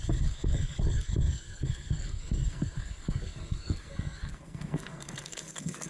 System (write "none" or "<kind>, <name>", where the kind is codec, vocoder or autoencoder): codec, SNAC